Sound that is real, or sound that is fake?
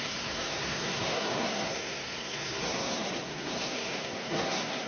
fake